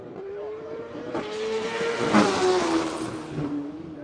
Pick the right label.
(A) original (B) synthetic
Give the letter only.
B